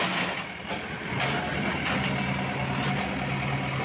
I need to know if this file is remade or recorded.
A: recorded